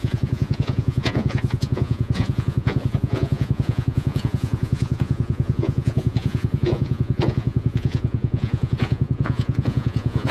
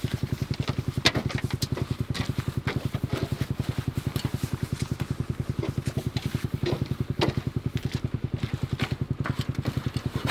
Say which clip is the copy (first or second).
first